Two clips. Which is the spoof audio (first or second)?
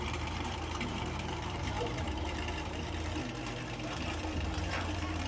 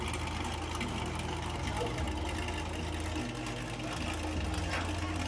first